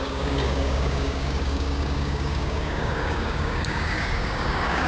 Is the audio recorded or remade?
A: remade